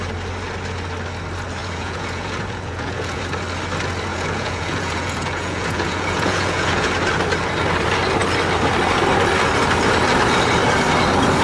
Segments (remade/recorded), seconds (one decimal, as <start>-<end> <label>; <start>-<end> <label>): 0.0-1.6 recorded; 1.6-3.2 remade; 3.2-4.1 recorded; 4.1-6.9 remade; 6.9-11.4 recorded